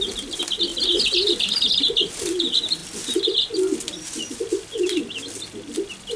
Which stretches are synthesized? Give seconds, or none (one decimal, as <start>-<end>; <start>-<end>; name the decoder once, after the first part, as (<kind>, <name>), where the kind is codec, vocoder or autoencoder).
none